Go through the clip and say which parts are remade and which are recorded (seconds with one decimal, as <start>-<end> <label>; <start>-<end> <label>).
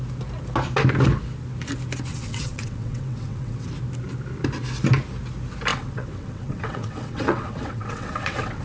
0.0-2.1 recorded; 2.1-3.7 remade; 3.7-5.7 recorded; 5.7-8.6 remade